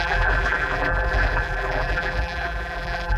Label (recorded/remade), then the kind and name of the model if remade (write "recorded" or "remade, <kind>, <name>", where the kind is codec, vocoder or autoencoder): remade, vocoder, BigVGAN v2